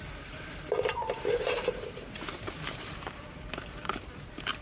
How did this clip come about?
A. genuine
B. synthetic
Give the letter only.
B